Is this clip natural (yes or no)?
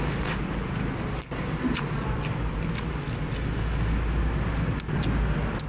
yes